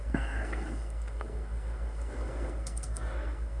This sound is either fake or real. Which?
fake